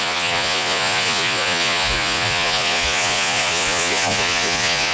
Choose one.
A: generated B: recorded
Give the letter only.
A